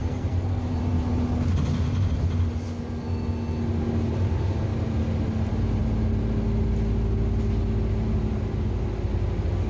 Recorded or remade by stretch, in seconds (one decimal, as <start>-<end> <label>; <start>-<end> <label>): 0.0-0.6 remade; 0.6-9.7 recorded